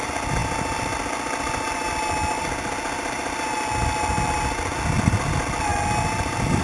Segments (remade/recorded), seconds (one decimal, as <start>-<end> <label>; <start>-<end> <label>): 0.0-6.6 recorded